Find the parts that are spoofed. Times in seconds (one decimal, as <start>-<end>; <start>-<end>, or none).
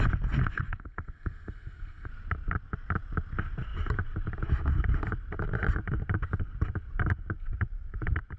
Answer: 0.4-2.1